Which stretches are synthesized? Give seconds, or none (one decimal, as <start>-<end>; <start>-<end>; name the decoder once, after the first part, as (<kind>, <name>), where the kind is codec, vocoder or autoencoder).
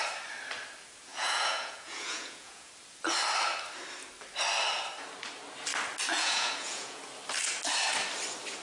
1.1-2.7 (vocoder, Vocos); 6.1-7.0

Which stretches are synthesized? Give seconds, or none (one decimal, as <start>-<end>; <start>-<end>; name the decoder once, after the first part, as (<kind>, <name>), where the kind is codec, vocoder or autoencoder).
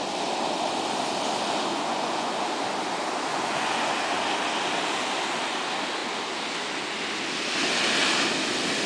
1.7-2.3 (vocoder, Vocos); 3.3-3.9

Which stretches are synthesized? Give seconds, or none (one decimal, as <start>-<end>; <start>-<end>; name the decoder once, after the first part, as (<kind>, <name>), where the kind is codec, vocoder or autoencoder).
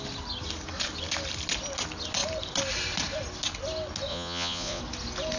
4.1-4.8 (vocoder, Vocos)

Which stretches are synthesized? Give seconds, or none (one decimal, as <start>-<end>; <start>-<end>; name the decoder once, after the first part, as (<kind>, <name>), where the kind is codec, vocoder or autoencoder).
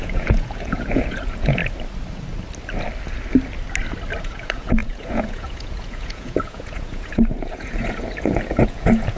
0.0-1.6 (vocoder, Vocos); 4.2-9.2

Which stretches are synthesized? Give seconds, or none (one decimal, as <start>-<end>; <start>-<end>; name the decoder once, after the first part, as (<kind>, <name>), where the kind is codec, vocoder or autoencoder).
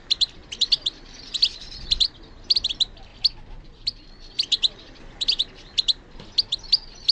none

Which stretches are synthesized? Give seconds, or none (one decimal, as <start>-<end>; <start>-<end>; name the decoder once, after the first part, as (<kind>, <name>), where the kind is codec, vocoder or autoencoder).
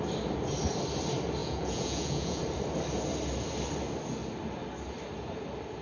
1.4-2.4 (vocoder, Vocos)